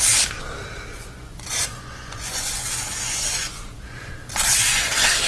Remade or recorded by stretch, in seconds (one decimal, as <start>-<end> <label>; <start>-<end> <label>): 0.0-0.9 recorded; 0.9-4.1 remade; 4.1-4.7 recorded; 4.7-5.3 remade